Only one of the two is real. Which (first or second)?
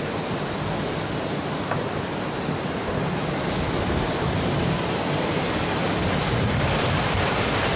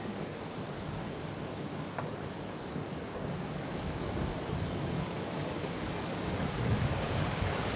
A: first